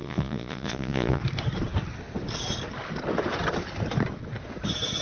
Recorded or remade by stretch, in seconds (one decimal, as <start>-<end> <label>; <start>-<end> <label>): 0.0-1.2 remade; 1.2-5.0 recorded

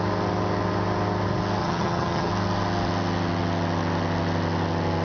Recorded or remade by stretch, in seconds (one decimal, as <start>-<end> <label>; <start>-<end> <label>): 0.0-1.6 recorded; 1.6-2.3 remade; 2.3-5.0 recorded

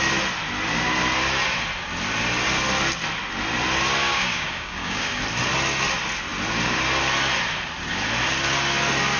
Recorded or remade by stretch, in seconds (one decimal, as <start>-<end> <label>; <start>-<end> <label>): 0.0-4.0 recorded; 4.0-5.2 remade; 5.2-9.2 recorded

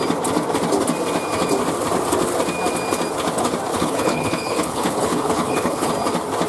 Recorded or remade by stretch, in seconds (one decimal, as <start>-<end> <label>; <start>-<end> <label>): 0.0-3.7 recorded; 3.7-5.9 remade; 5.9-6.5 recorded

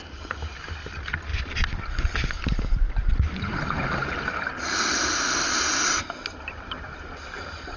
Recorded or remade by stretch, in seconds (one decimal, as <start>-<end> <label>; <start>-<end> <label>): 0.0-7.8 recorded

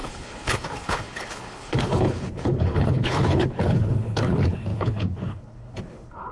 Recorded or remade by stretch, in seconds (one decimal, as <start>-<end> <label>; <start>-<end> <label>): 0.0-6.3 remade

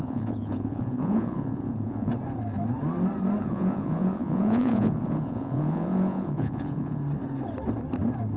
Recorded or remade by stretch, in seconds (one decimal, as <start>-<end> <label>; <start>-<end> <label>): 0.0-2.1 remade; 2.1-3.4 recorded; 3.4-7.0 remade; 7.0-8.4 recorded

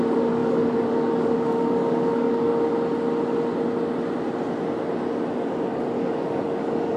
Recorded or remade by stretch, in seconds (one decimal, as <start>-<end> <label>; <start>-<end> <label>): 0.0-2.5 remade; 2.5-5.3 recorded; 5.3-7.0 remade